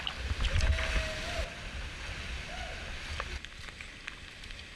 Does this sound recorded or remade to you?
recorded